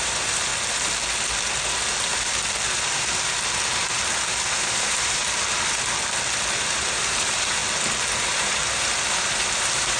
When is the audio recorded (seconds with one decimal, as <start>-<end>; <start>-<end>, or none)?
0.5-4.6; 5.2-6.6; 7.6-8.2